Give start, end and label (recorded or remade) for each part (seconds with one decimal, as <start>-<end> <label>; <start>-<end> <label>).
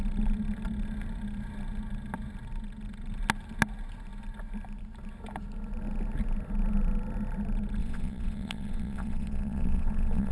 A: 0.0-7.8 recorded; 7.8-10.3 remade